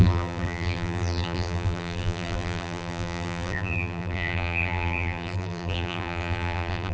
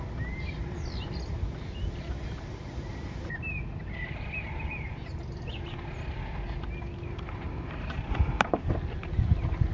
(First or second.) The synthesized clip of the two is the first